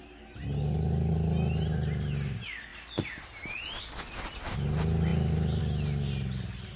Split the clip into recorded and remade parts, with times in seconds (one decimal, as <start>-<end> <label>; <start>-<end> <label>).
0.0-6.8 recorded